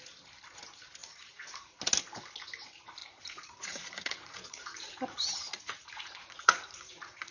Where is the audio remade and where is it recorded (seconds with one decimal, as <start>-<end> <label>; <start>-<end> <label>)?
0.0-1.0 recorded; 1.0-1.8 remade; 1.8-3.0 recorded; 3.0-7.3 remade